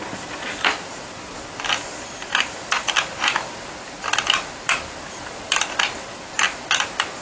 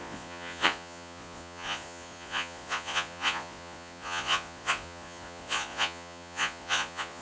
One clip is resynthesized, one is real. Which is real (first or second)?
first